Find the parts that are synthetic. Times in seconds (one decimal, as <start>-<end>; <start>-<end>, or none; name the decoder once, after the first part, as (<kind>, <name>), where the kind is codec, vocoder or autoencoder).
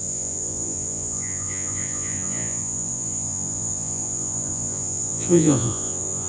0.0-6.3 (vocoder, Vocos)